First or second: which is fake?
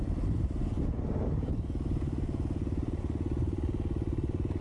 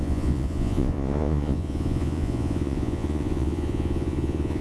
second